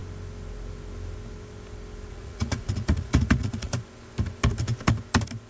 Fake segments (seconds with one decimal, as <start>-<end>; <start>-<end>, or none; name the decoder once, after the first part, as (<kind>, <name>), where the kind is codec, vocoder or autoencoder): 2.1-3.7 (vocoder, Vocos)